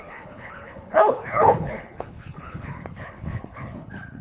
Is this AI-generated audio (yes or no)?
yes